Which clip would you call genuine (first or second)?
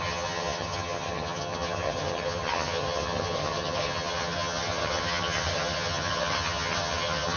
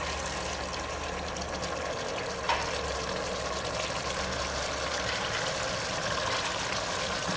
second